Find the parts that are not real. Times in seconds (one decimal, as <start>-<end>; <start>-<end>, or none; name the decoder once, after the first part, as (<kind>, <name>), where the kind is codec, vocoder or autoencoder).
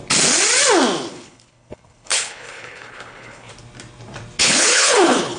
1.1-3.5 (codec, HILCodec); 4.4-5.4